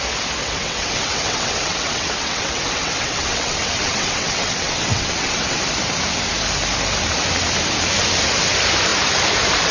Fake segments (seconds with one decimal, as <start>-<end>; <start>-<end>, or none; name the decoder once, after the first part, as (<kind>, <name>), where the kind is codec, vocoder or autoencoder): 0.4-5.6 (vocoder, WaveNeXt)